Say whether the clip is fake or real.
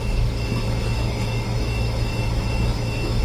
fake